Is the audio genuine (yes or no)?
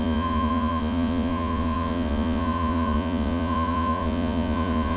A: no